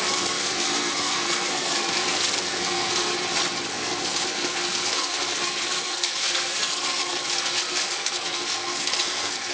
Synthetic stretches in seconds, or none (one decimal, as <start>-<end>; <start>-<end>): 0.0-3.1; 3.7-9.5